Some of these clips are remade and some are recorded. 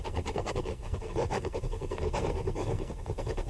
remade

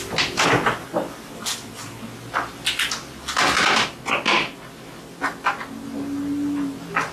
recorded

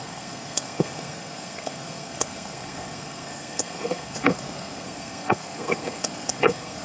remade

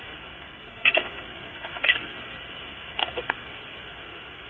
remade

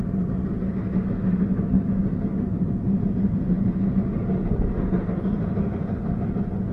recorded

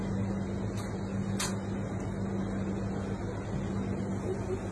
recorded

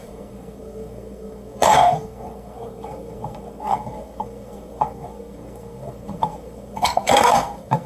remade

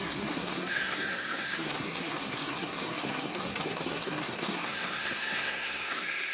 remade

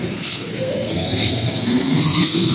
remade